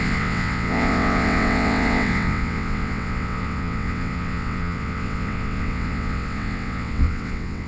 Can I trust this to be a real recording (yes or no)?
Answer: no